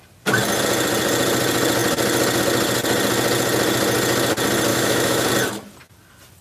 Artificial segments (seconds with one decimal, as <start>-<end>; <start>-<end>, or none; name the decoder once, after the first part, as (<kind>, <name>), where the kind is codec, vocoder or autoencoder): 4.7-5.3 (autoencoder, DAC-VAE)